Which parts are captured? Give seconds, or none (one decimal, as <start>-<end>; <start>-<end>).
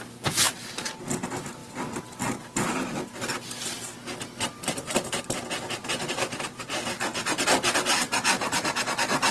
0.0-1.6; 5.2-9.3